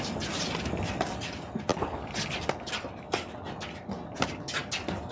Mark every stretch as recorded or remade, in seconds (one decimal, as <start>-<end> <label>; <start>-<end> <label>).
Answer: 0.0-1.7 recorded; 1.7-2.9 remade; 2.9-5.1 recorded